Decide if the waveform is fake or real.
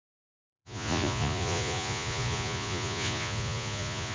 fake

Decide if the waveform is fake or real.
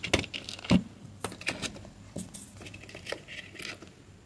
real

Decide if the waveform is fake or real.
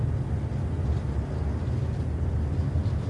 real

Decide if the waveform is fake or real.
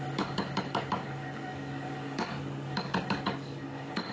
fake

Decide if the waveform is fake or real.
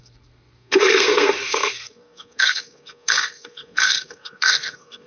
fake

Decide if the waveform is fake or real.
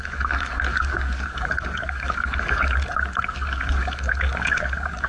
fake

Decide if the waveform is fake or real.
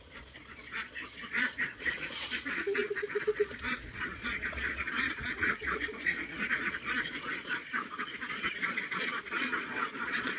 fake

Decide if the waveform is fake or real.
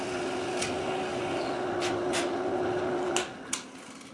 real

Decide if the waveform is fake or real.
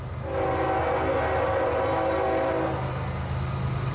real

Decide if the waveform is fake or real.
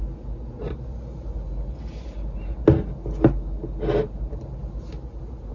real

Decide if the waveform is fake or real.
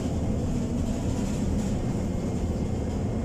real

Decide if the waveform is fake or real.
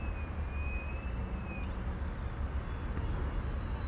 real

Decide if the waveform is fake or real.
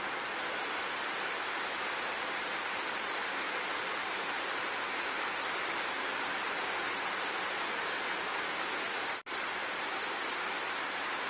real